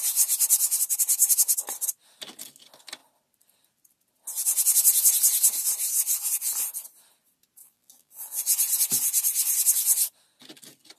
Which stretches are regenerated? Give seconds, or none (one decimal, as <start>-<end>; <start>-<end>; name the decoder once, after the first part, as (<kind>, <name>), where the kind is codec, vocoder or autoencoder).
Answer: 7.6-8.4 (vocoder, BigVGAN v2)